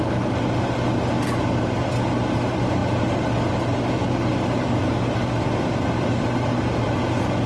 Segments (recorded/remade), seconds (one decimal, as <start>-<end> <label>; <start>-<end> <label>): 0.0-7.5 recorded